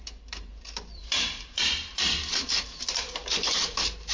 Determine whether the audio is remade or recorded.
remade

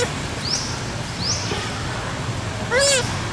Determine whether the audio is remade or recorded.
recorded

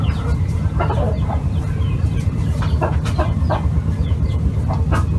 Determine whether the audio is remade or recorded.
remade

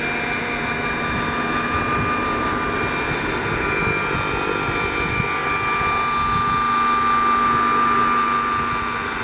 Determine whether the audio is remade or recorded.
recorded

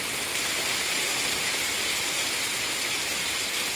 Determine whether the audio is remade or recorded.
recorded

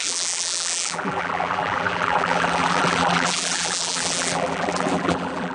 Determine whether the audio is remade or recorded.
remade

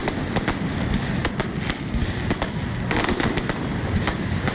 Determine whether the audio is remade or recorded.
recorded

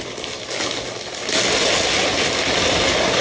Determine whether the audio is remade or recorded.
recorded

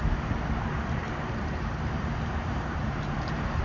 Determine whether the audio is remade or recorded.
remade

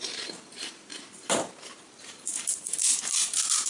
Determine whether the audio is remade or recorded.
remade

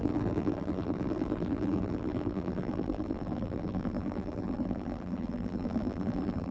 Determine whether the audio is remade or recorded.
remade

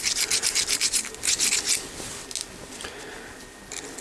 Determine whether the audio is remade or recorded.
recorded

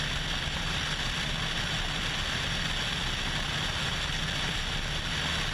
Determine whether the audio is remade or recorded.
recorded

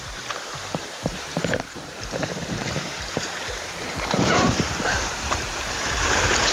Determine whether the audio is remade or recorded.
remade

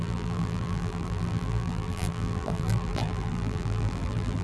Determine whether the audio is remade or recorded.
remade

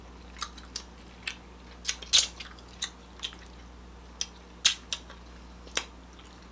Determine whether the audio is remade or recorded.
recorded